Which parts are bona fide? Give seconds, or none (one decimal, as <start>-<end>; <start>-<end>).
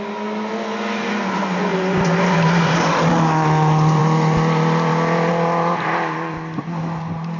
0.0-1.7; 3.1-4.0; 5.3-7.4